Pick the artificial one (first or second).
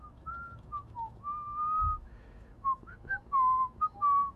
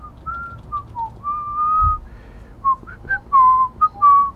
first